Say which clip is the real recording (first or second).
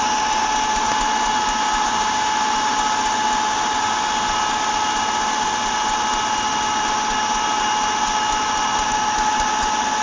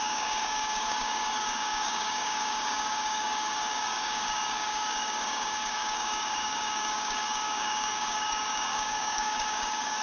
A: first